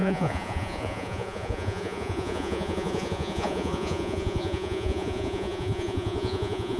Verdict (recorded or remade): remade